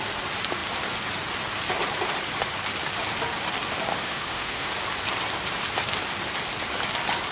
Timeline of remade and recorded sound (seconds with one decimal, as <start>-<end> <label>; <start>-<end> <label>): 0.0-3.9 recorded; 3.9-4.7 remade; 4.7-7.3 recorded